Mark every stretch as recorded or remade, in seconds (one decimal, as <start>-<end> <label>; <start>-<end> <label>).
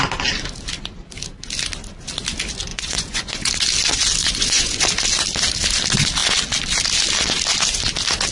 0.0-2.7 recorded; 2.7-3.5 remade; 3.5-4.2 recorded; 4.2-4.9 remade; 4.9-8.3 recorded